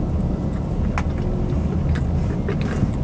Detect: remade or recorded recorded